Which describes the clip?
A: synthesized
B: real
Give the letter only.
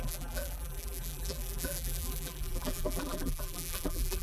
A